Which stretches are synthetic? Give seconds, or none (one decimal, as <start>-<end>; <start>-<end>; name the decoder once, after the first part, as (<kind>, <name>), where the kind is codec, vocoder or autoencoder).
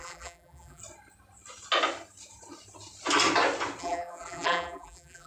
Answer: 0.0-0.8 (vocoder, BigVGAN v2); 3.8-5.3